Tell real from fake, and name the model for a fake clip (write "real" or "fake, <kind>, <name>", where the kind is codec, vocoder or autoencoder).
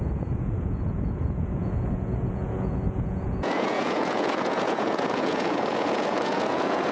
fake, vocoder, Vocos